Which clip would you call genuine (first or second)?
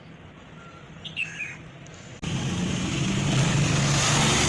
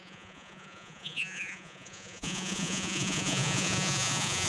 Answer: first